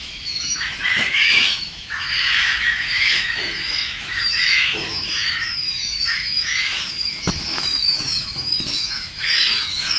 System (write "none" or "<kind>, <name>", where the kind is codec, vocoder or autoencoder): autoencoder, DAC-VAE